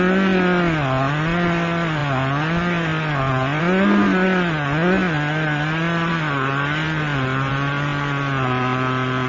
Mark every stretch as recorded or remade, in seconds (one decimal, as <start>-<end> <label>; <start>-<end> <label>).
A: 0.0-9.3 recorded